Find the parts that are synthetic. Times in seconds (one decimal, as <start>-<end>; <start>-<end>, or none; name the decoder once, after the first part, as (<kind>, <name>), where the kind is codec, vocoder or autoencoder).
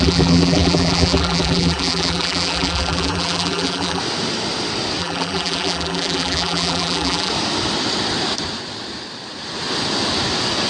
0.0-4.0 (vocoder, BigVGAN v2); 5.0-7.3